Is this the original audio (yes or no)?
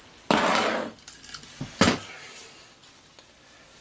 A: yes